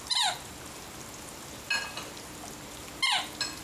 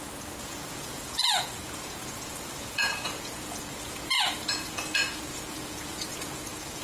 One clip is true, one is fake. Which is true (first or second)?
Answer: first